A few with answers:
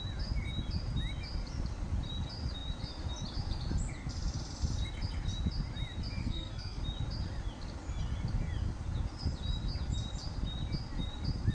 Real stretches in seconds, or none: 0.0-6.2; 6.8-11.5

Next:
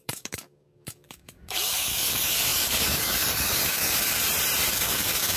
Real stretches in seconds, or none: 4.2-4.7

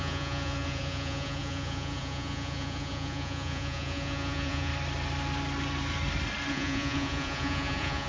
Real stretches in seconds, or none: 4.7-6.5

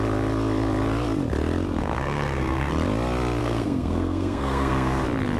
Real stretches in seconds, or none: 0.0-1.8; 2.7-3.4; 5.0-5.4